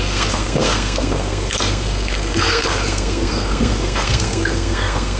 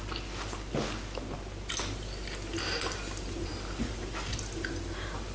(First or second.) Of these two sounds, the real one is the second